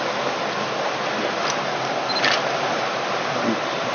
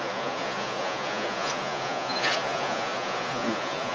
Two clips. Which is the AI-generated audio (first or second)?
second